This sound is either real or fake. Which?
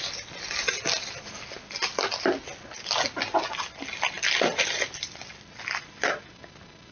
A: real